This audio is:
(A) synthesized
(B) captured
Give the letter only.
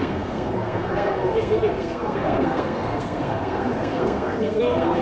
A